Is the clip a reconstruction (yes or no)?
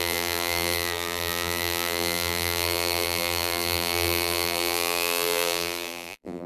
yes